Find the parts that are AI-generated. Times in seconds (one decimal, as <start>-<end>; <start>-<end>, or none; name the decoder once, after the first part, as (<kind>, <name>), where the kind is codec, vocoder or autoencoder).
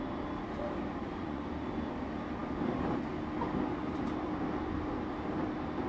1.0-1.5 (vocoder, Vocos)